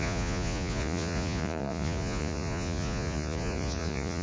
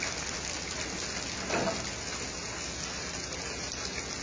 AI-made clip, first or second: first